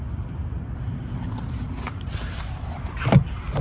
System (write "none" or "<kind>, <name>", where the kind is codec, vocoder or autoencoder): vocoder, BigVGAN v2